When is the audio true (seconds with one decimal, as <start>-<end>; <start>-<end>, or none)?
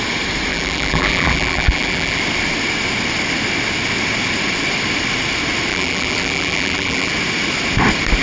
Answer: 0.0-0.5; 2.2-5.7; 7.1-8.2